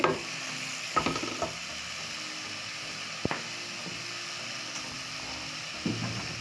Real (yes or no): yes